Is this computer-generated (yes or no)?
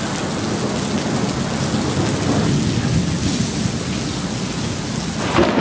no